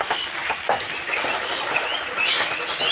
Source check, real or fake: real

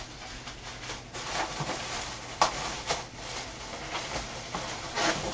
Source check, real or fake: real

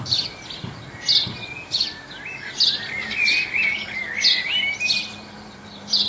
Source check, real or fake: real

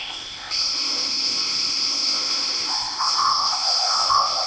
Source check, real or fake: fake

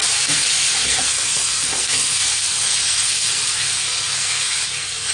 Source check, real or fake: fake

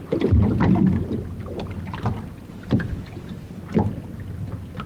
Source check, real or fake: real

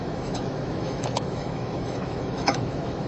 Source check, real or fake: fake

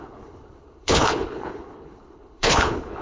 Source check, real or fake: fake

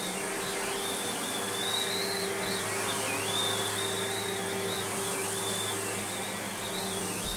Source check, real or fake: real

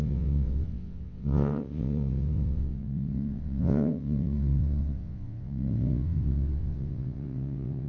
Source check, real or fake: fake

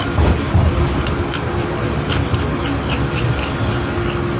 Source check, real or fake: real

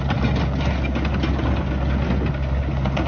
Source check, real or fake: real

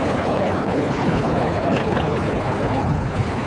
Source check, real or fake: fake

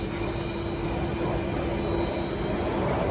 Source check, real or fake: real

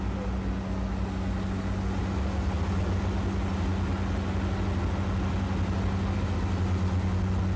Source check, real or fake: real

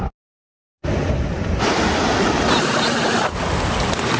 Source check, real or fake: real